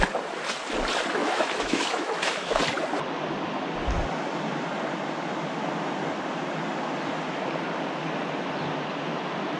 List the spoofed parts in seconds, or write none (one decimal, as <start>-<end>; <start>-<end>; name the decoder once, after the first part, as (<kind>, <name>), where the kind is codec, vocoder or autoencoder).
1.2-2.6 (autoencoder, DAC-VAE)